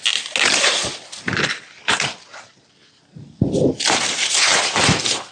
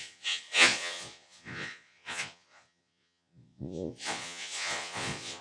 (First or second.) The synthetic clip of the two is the second